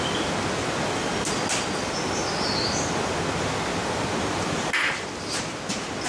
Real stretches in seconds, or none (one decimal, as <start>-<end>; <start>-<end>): 0.0-6.1